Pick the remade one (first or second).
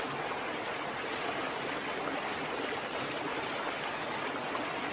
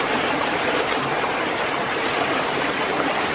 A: second